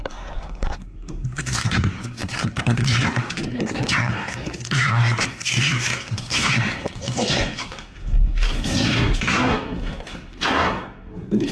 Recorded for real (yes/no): no